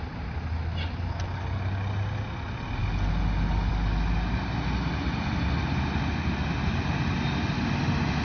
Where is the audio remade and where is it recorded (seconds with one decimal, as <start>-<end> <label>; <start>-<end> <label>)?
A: 0.0-8.2 recorded